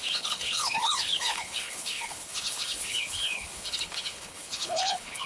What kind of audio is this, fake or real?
fake